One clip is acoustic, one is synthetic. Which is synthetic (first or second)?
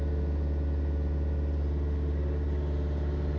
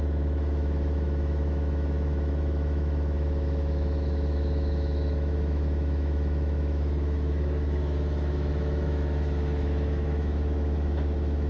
second